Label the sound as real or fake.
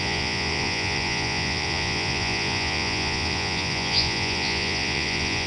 fake